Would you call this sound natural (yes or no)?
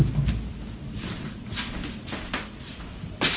yes